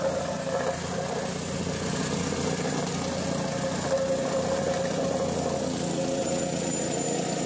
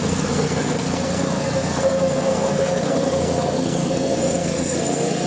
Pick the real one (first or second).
first